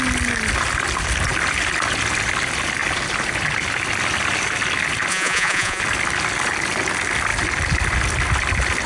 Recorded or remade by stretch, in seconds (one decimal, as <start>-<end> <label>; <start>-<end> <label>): 0.0-5.1 recorded; 5.1-5.8 remade; 5.8-8.9 recorded